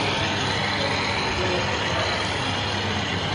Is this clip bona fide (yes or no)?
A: yes